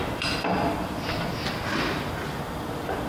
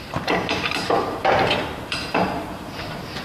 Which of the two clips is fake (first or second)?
second